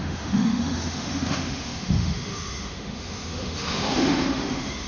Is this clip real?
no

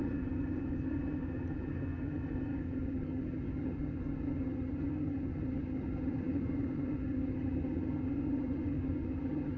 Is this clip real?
no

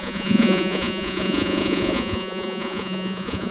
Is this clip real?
no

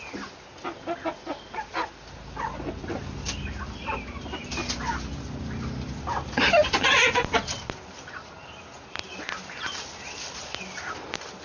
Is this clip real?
yes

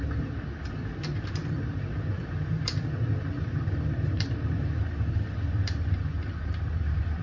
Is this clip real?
no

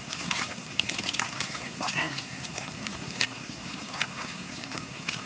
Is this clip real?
no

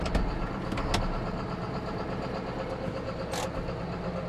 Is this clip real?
yes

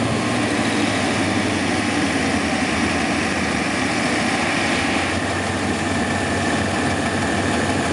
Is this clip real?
yes